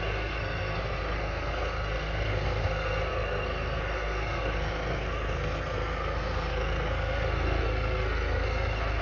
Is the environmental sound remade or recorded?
remade